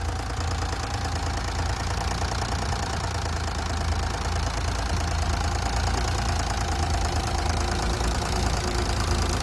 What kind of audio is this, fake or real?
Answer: real